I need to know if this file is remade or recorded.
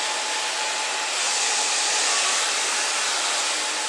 recorded